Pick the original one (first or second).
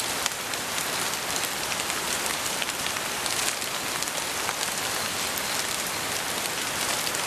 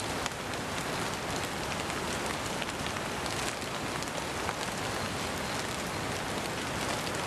second